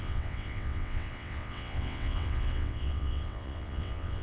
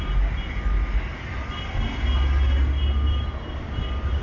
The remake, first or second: first